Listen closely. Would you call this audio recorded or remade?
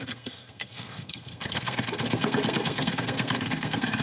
remade